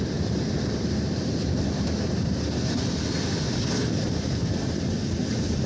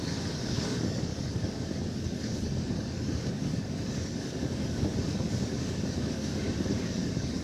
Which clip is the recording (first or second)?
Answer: first